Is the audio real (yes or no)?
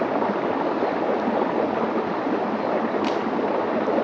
yes